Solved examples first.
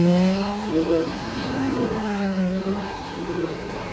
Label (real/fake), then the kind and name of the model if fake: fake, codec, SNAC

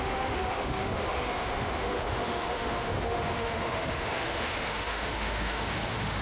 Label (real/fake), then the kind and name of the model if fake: fake, autoencoder, DAC-VAE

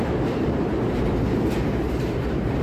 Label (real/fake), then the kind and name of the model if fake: fake, vocoder, BigVGAN v2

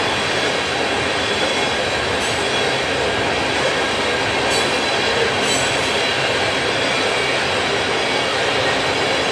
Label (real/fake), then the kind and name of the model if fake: real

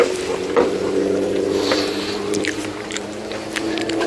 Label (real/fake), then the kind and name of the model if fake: fake, vocoder, BigVGAN v2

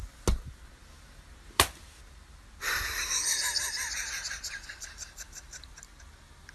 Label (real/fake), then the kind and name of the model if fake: real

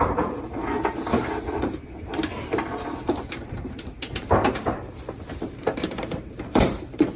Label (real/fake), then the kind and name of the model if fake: fake, vocoder, BigVGAN v2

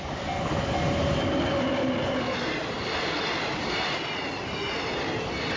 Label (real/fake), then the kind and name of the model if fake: real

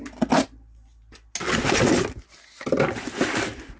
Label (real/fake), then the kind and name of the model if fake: real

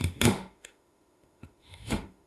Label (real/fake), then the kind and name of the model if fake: fake, autoencoder, DAC-VAE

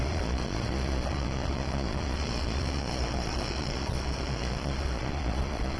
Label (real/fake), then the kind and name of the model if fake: fake, vocoder, Vocos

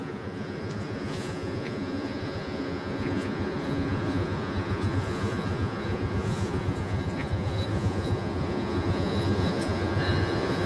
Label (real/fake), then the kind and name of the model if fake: fake, vocoder, Vocos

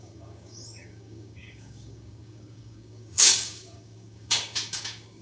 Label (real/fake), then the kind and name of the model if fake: fake, codec, DAC